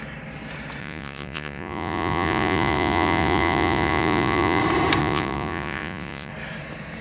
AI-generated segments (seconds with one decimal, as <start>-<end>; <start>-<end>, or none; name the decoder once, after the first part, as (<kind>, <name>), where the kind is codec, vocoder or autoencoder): 0.8-4.6 (vocoder, Vocos); 5.0-6.3